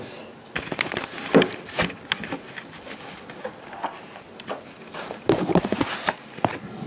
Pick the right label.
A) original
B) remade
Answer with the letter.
A